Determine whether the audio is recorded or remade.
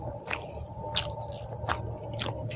recorded